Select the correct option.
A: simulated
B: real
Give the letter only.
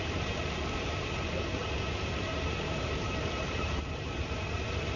A